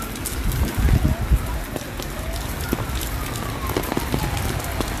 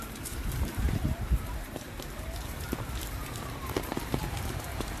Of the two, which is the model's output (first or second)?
second